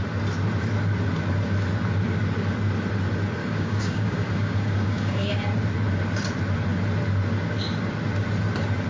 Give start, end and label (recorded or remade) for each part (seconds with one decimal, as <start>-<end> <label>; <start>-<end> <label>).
0.0-3.4 recorded; 3.4-5.4 remade; 5.4-8.9 recorded